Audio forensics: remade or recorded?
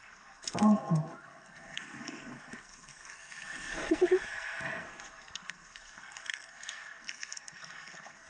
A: remade